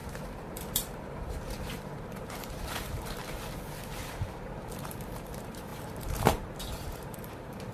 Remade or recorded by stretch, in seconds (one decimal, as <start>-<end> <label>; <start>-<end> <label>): 0.0-3.2 remade; 3.2-4.9 recorded; 4.9-7.7 remade